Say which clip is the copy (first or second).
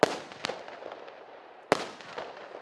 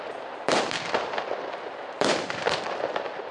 second